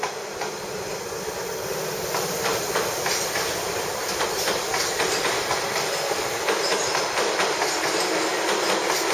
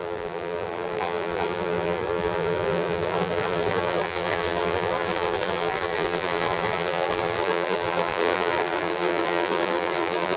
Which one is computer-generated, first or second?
second